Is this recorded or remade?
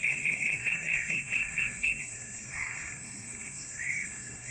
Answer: remade